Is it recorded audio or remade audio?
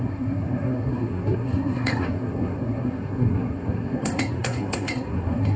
remade